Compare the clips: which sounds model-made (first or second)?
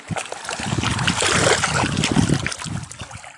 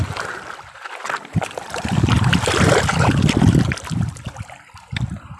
second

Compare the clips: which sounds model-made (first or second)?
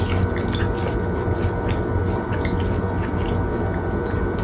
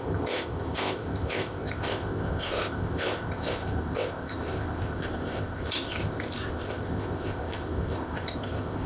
second